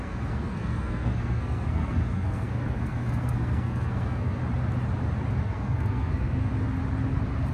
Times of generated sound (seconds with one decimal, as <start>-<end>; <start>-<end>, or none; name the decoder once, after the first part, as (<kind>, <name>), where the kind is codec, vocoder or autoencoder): 0.0-4.4 (codec, SNAC); 5.4-6.5

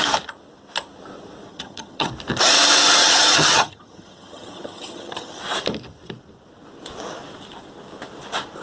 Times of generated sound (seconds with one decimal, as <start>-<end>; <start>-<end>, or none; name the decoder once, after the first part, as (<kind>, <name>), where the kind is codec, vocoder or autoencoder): 1.5-2.1 (vocoder, HiFi-GAN); 3.0-5.4

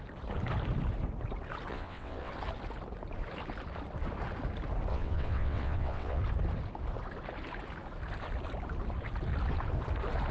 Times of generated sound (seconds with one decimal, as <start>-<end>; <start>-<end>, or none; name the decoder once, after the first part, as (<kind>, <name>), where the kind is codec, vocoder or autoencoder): 1.7-2.3 (vocoder, WaveNeXt); 4.9-6.2

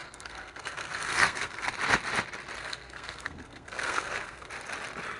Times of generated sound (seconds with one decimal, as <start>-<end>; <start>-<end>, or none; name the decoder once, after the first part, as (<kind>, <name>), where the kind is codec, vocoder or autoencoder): 0.0-1.7 (codec, SNAC); 2.6-4.5

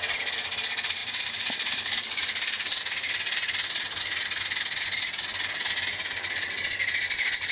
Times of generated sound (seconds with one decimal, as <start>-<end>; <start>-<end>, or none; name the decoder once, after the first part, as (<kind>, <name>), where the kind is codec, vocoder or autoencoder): 1.0-2.8 (vocoder, BigVGAN v2)

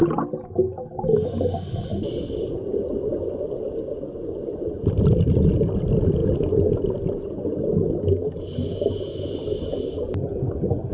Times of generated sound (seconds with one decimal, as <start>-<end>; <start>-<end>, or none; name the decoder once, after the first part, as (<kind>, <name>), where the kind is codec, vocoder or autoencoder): none

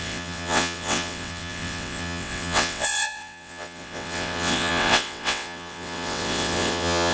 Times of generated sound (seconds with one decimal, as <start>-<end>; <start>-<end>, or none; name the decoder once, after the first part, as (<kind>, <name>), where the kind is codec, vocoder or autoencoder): 0.0-7.1 (vocoder, WaveNeXt)